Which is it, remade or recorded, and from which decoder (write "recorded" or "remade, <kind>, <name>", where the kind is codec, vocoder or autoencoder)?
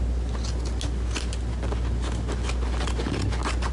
recorded